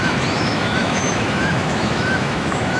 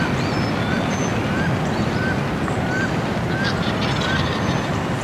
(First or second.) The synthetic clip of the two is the first